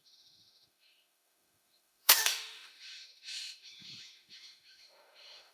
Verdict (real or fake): fake